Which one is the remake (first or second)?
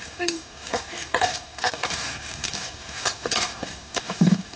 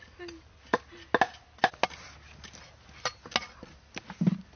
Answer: first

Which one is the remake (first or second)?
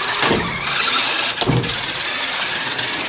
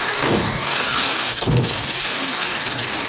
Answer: second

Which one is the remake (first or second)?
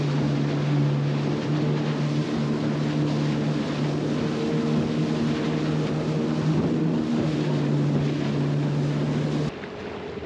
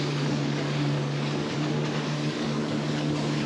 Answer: second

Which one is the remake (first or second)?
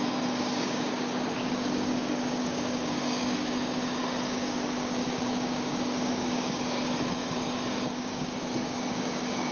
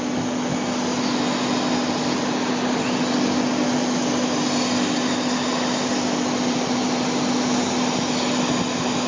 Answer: first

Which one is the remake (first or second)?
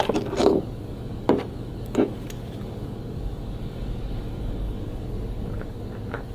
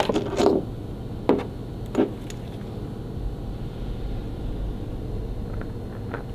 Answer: first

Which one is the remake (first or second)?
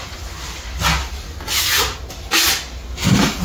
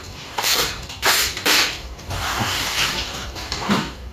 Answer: second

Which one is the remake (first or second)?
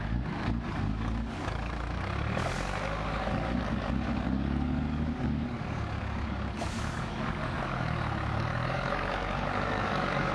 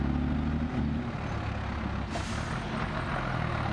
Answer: first